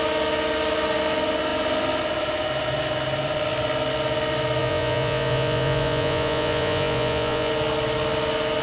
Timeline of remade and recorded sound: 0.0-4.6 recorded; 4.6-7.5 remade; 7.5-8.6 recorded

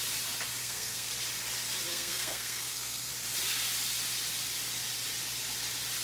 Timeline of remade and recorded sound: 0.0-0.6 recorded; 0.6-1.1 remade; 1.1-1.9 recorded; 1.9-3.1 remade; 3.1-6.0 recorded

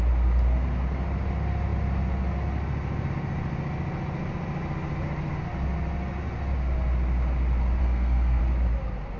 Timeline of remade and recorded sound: 0.0-7.8 recorded; 7.8-8.4 remade; 8.4-9.2 recorded

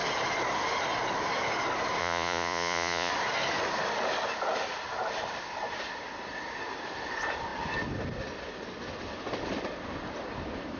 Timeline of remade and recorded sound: 0.0-2.0 recorded; 2.0-3.1 remade; 3.1-10.8 recorded